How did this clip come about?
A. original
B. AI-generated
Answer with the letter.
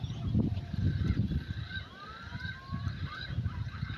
A